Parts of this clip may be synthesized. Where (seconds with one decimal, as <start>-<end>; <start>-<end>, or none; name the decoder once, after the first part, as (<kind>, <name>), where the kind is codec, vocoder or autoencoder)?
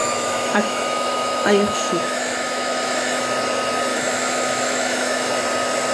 0.0-3.2 (autoencoder, DAC-VAE); 3.9-5.3